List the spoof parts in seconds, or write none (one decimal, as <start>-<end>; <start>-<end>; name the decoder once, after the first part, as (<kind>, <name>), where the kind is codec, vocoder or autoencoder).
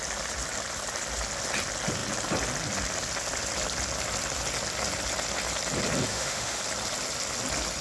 6.1-6.6 (autoencoder, DAC-VAE)